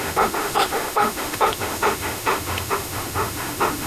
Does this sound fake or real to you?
fake